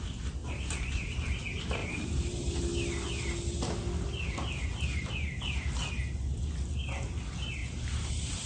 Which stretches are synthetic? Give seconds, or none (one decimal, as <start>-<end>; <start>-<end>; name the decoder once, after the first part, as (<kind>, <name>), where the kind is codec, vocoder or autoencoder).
0.4-1.4 (vocoder, BigVGAN v2); 1.8-2.6; 7.6-8.1